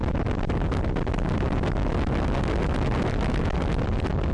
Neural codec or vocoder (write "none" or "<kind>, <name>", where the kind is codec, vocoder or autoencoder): none